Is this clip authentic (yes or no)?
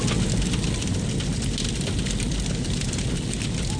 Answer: yes